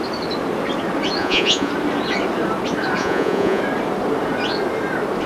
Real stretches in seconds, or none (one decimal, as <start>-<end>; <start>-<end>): 0.0-1.2; 1.7-3.0; 3.6-5.3